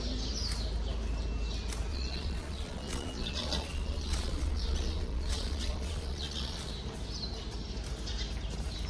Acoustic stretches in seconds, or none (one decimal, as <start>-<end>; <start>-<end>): 0.0-1.9; 6.7-8.9

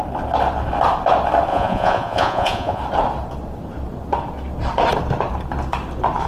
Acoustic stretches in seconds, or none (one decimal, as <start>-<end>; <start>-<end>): 0.0-1.5; 2.8-6.3

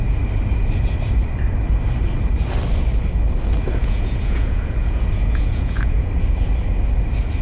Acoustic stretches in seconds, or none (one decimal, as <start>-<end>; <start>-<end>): 0.0-3.8; 6.1-7.4

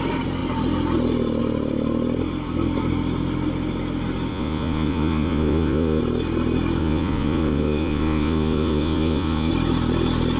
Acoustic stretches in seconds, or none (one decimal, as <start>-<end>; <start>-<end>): 0.0-4.3; 6.0-6.8; 9.5-10.4

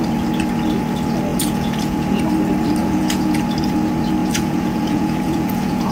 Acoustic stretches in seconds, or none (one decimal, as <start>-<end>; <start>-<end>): 0.0-1.3; 2.2-2.8; 3.4-4.2

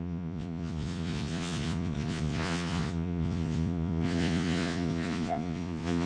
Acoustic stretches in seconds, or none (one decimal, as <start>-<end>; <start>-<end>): none

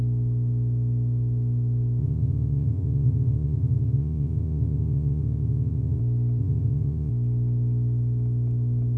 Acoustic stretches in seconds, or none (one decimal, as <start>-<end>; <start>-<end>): 0.0-2.0; 6.0-6.4; 7.1-9.0